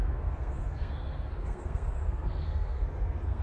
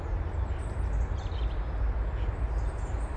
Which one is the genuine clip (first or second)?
second